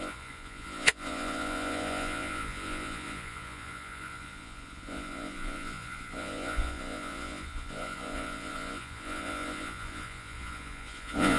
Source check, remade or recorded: remade